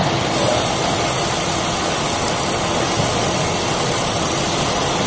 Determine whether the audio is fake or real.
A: real